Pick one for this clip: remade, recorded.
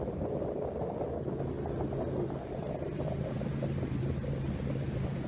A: remade